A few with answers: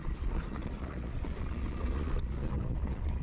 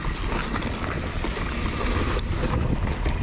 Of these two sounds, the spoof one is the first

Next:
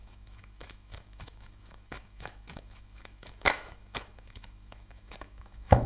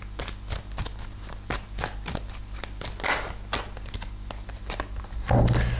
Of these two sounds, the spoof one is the first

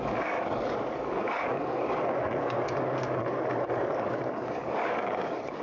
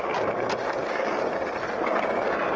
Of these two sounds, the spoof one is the first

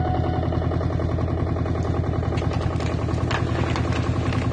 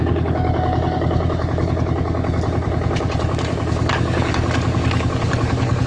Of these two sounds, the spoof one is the second